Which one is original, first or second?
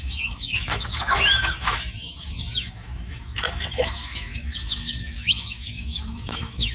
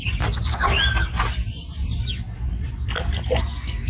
second